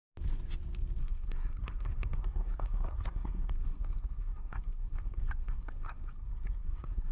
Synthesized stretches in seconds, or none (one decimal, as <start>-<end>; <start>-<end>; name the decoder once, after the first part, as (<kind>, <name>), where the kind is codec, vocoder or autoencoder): 1.0-7.1 (codec, SNAC)